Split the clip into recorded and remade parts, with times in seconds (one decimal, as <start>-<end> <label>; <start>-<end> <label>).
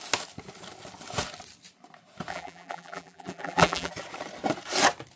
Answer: 0.0-2.3 recorded; 2.3-3.9 remade; 3.9-5.2 recorded